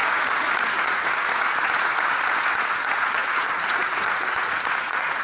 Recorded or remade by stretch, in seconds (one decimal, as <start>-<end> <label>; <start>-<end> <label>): 0.0-5.2 remade